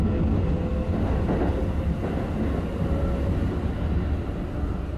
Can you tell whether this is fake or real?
real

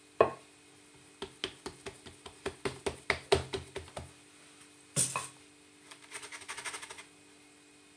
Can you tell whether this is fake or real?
real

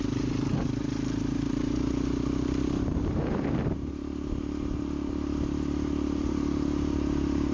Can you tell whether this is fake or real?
fake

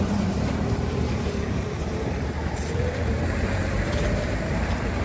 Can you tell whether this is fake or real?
fake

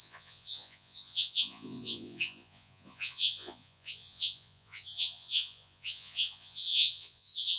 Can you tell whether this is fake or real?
fake